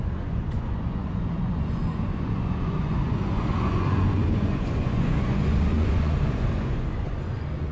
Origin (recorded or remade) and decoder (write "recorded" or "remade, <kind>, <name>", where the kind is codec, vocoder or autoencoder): remade, vocoder, Vocos